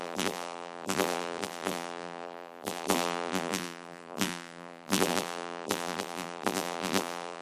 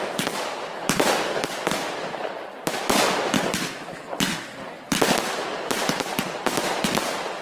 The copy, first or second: first